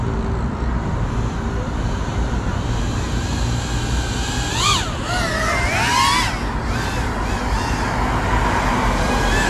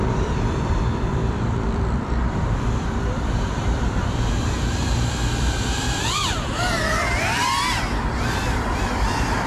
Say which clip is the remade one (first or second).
second